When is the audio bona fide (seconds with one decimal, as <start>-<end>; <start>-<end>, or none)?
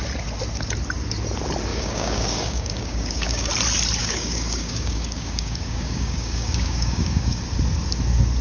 0.0-1.7; 3.5-4.0; 7.4-8.4